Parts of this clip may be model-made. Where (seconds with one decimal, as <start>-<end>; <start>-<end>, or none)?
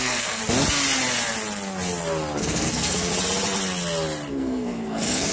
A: 0.0-0.4; 2.4-3.1; 4.3-5.3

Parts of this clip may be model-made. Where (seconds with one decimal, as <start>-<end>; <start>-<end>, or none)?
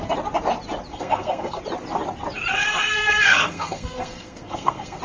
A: 0.9-1.6; 2.5-5.0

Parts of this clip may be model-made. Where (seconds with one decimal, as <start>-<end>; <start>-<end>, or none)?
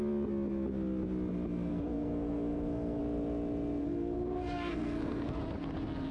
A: 1.7-3.0; 3.8-5.4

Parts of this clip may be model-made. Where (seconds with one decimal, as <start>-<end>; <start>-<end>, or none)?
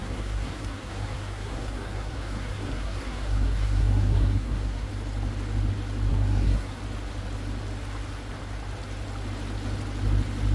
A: 0.0-4.9; 6.1-6.8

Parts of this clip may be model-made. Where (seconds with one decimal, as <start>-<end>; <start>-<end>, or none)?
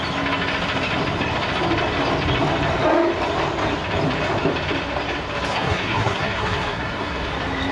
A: 5.5-7.3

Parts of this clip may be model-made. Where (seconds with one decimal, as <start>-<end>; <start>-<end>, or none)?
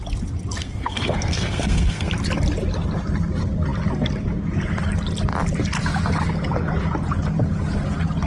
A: 0.6-2.1